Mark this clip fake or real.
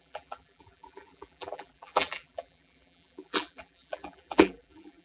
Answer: fake